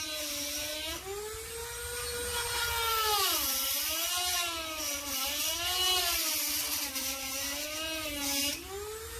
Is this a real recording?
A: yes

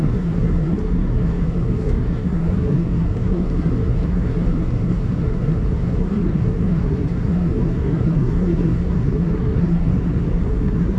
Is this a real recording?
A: no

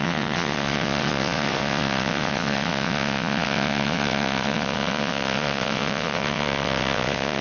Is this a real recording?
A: no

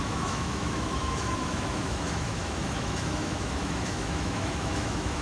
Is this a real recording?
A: no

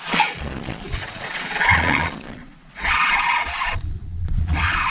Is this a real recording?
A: no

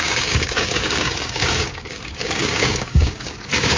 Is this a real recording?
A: no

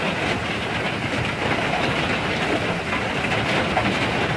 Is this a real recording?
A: no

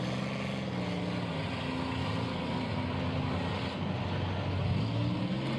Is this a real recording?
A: yes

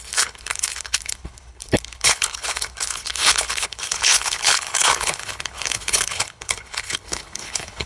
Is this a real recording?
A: no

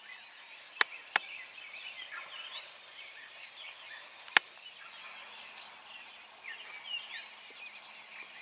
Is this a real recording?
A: yes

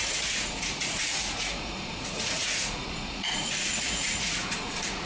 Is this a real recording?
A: no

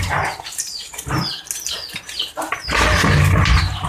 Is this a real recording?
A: yes